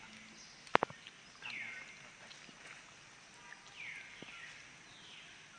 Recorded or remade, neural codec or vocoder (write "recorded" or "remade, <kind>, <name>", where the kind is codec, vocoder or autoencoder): recorded